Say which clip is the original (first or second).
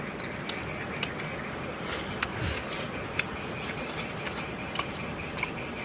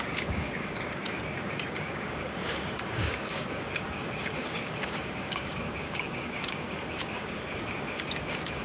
first